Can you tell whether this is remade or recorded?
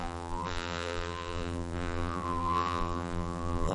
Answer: remade